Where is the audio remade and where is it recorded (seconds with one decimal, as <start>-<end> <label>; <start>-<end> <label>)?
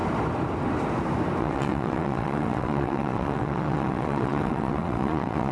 0.0-1.4 recorded; 1.4-5.5 remade